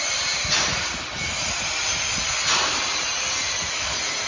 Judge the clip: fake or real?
real